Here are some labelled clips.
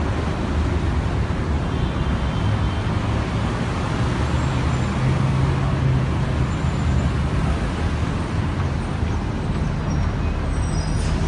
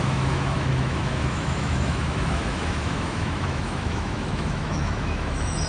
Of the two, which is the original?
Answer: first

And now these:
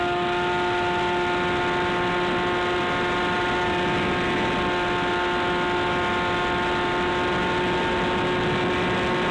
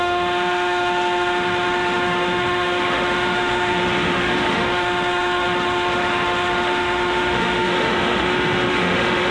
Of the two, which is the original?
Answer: first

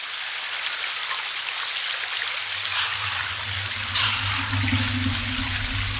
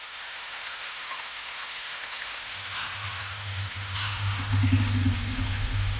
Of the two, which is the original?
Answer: first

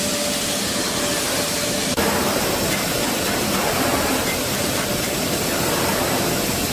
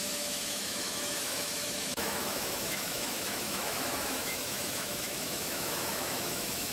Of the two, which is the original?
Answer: first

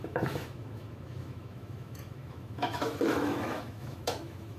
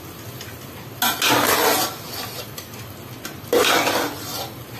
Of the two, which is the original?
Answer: second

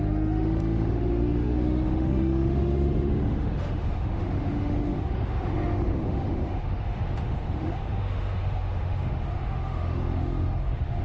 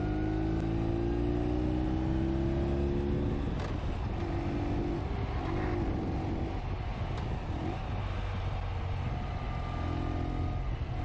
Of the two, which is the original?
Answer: second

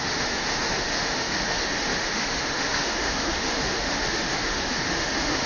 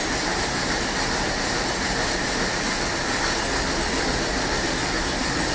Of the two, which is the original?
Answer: second